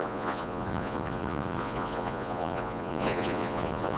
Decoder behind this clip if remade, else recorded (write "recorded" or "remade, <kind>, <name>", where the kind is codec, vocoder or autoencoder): remade, vocoder, Vocos